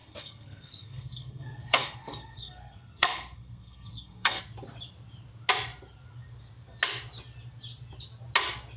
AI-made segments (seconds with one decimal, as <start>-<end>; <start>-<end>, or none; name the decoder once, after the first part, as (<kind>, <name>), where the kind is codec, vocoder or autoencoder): 0.0-4.4 (codec, SNAC)